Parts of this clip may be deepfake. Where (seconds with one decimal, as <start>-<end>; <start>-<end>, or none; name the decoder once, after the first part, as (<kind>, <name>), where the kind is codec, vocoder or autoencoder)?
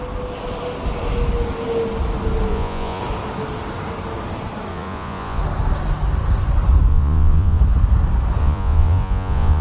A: 2.5-3.0 (vocoder, Vocos); 4.7-5.4; 6.9-7.6; 8.4-9.6